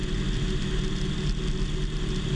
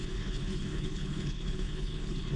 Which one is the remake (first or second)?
second